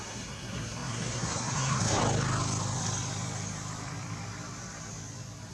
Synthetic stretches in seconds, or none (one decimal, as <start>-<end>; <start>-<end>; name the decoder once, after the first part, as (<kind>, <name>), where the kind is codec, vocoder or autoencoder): 0.0-2.0 (codec, SNAC)